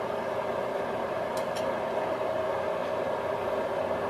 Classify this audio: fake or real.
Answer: real